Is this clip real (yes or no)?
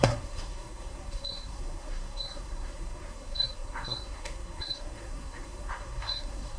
no